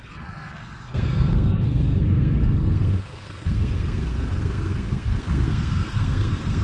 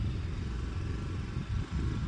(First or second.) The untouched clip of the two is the second